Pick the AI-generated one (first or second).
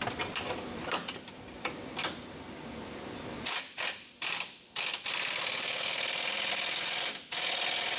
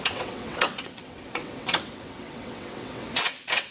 second